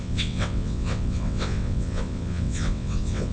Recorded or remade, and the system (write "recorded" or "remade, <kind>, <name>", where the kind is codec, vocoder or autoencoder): remade, vocoder, WaveNeXt